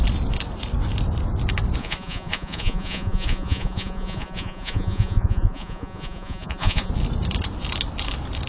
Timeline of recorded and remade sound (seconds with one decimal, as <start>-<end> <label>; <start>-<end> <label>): 0.0-1.8 recorded; 1.8-6.9 remade; 6.9-8.5 recorded